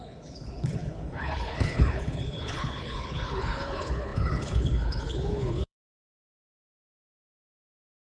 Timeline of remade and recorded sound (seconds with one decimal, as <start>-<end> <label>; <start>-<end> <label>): 0.0-8.0 remade